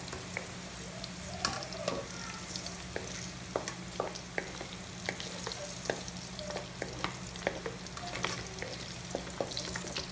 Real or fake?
real